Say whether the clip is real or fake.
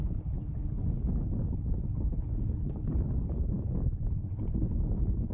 fake